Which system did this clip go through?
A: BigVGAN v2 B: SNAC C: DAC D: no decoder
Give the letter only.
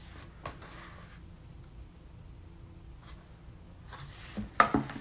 D